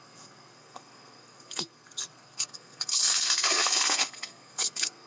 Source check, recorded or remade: remade